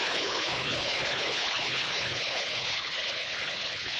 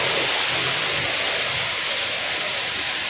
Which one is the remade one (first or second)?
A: first